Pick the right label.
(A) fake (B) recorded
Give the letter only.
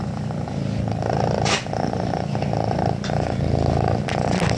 B